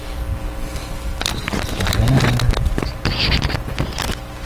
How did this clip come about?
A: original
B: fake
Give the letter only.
A